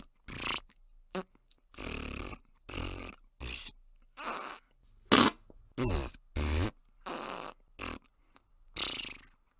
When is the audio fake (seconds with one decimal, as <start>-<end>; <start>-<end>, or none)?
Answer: none

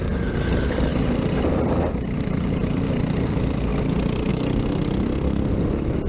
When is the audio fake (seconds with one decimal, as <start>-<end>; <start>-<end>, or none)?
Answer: none

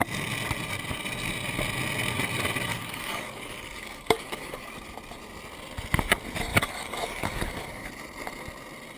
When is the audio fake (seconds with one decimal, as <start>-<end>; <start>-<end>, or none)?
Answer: 2.7-4.7; 6.5-7.9

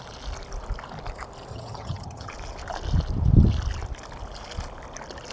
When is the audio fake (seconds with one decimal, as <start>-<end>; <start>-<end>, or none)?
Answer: 1.5-2.3

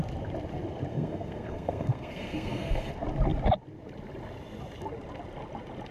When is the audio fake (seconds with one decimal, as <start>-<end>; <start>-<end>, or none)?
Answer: 0.9-2.9

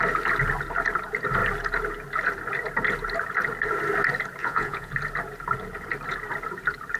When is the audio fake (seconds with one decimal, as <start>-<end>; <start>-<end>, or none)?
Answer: 4.4-4.9

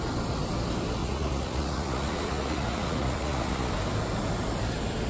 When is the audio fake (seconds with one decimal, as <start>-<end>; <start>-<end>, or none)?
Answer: 1.0-3.7

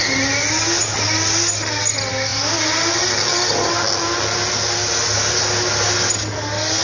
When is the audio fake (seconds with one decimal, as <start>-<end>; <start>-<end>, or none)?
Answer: none